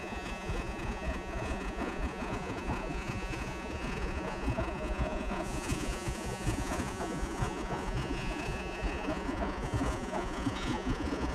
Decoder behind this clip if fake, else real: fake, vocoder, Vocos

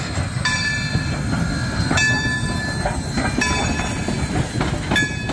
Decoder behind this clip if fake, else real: real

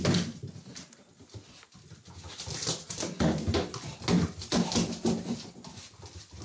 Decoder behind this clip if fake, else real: real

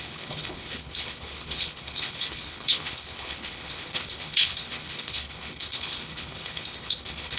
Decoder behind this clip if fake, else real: fake, codec, HILCodec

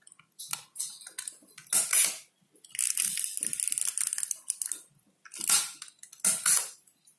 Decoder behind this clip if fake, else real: real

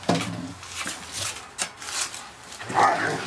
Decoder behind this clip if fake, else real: real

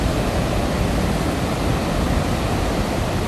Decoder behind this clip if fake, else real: real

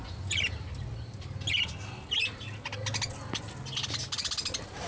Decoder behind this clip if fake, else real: real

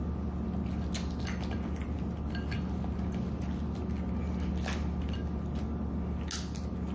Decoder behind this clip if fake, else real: real